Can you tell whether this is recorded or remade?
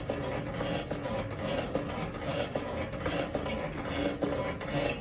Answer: recorded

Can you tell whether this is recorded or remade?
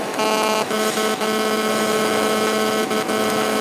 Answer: remade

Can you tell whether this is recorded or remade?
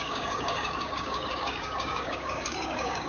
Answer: remade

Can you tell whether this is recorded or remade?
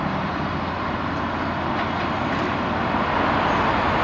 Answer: recorded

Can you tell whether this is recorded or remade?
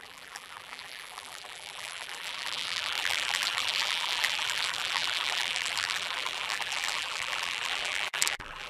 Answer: remade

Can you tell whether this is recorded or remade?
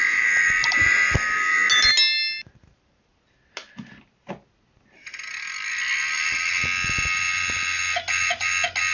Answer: recorded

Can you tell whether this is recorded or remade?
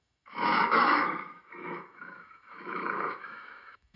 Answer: remade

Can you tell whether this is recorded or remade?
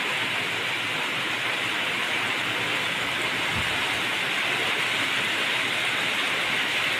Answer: recorded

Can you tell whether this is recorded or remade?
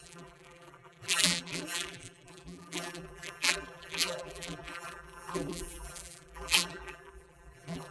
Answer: remade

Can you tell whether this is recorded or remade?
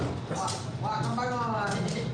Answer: recorded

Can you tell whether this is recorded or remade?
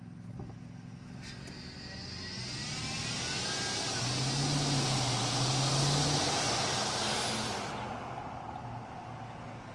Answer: recorded